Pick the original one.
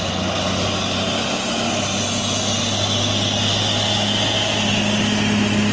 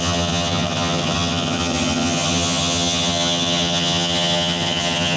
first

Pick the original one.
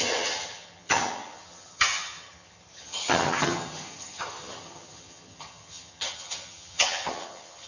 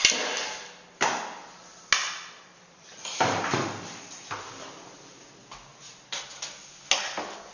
second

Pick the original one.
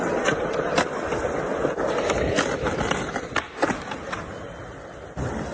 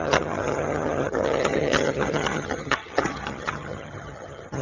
first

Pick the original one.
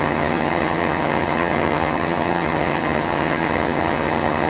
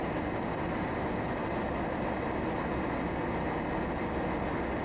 second